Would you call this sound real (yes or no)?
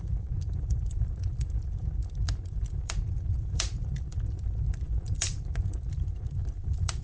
no